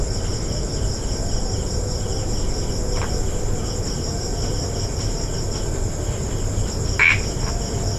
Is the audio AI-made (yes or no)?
no